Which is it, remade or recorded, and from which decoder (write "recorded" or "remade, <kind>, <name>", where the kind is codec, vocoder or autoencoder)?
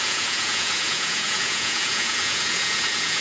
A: remade, vocoder, Vocos